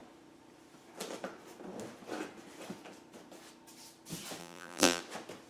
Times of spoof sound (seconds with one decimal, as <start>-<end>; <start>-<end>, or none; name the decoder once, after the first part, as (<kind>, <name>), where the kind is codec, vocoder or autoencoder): 4.4-5.0 (vocoder, BigVGAN v2)